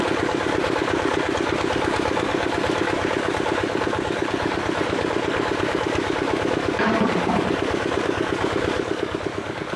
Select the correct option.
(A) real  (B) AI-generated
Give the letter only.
B